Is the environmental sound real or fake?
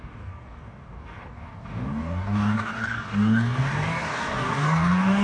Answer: fake